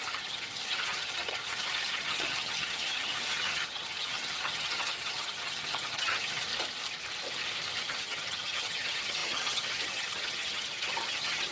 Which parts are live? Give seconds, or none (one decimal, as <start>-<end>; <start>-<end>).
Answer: 6.5-7.8